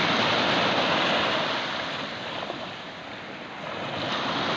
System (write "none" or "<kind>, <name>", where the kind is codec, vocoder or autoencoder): none